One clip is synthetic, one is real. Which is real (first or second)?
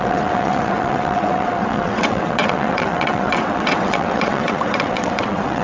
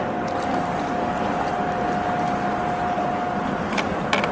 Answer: second